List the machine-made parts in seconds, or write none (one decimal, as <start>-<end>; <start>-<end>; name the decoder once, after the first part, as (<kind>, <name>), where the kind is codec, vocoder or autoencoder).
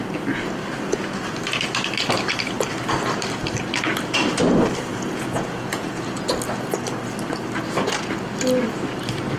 4.9-6.0 (vocoder, Vocos)